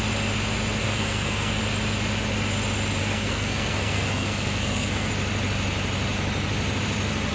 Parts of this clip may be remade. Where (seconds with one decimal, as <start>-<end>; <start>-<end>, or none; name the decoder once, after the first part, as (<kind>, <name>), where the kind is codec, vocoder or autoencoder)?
0.8-1.6 (codec, SNAC); 3.0-5.1